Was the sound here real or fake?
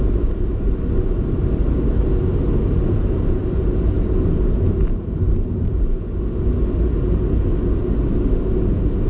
real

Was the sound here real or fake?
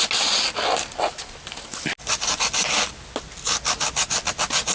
real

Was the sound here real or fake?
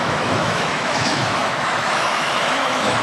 fake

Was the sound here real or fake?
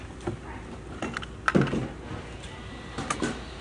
real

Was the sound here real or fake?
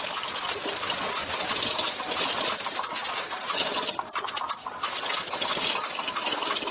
real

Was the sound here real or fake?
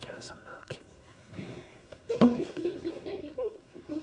fake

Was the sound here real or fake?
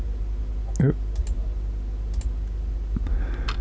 real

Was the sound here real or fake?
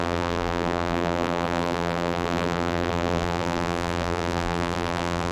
fake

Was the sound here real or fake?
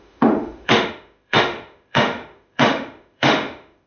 fake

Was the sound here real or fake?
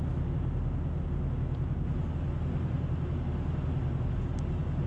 real